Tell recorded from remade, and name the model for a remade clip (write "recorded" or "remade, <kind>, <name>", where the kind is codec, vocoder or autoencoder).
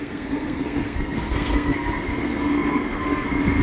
remade, codec, SNAC